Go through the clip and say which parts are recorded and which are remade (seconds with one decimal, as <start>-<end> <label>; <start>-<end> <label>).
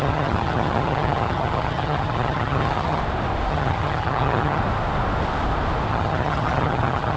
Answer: 0.0-3.0 remade; 3.0-3.5 recorded; 3.5-4.6 remade; 4.6-5.9 recorded; 5.9-7.2 remade